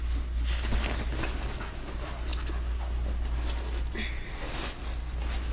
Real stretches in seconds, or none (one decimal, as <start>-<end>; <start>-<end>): 0.0-5.5